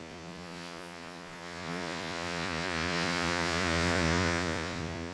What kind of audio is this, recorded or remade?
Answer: remade